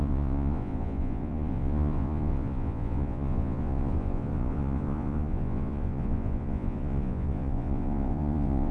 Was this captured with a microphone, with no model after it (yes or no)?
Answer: no